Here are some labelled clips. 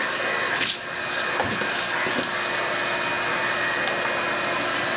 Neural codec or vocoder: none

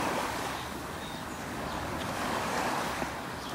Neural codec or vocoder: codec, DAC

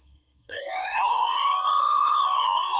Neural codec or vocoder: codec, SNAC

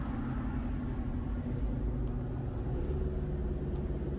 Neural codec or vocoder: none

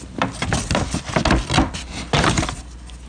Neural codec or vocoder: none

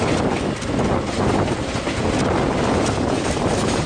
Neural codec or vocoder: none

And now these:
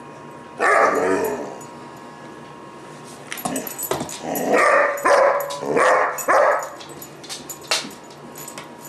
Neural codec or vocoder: none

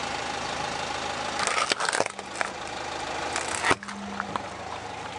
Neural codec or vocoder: none